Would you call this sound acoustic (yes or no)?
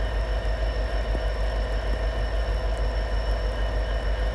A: yes